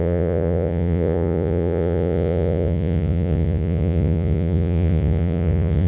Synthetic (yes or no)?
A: yes